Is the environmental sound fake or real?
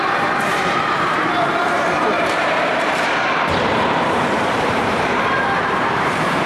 fake